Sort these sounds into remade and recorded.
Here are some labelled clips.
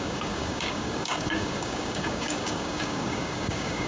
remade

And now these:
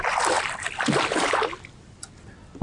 recorded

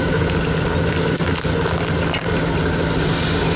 recorded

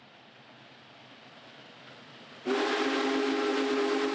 recorded